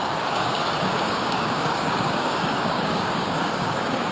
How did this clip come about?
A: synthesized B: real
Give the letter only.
A